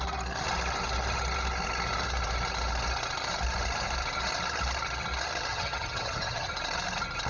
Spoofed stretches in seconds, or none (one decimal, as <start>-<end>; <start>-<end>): 5.5-6.5